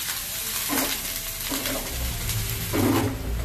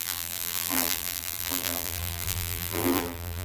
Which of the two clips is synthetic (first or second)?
second